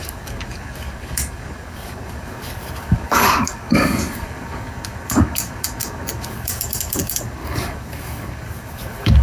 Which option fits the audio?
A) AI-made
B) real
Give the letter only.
A